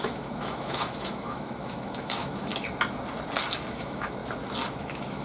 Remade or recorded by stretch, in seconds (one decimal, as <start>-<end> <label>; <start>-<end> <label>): 0.0-2.5 remade; 2.5-3.7 recorded; 3.7-4.2 remade; 4.2-4.7 recorded; 4.7-5.2 remade